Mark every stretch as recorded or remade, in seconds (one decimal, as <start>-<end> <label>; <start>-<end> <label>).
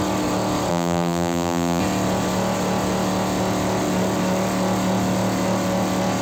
0.0-0.7 recorded; 0.7-1.8 remade; 1.8-6.2 recorded